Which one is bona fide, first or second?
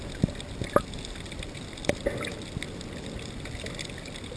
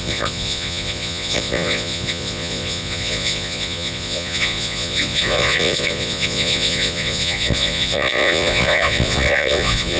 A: first